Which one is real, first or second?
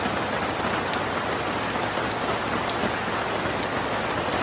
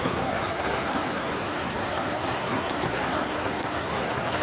first